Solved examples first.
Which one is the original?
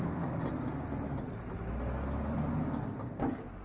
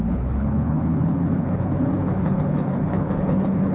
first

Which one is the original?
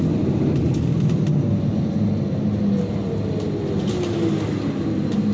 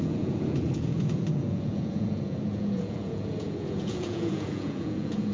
first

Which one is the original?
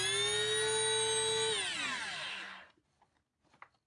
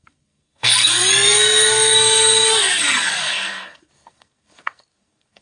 first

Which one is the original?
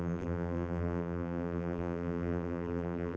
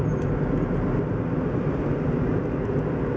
second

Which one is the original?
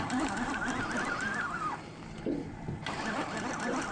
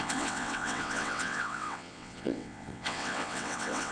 first